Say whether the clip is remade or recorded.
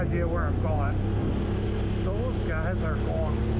recorded